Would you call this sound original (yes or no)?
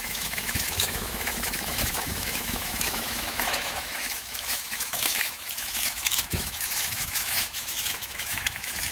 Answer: no